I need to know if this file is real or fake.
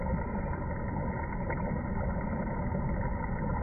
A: real